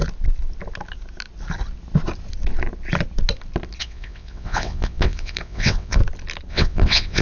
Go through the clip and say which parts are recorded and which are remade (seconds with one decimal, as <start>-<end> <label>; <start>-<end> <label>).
0.0-3.8 recorded; 3.8-6.0 remade; 6.0-6.5 recorded; 6.5-7.2 remade